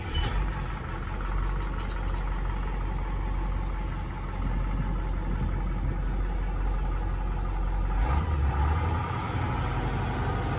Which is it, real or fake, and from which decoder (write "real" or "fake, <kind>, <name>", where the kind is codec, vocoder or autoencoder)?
real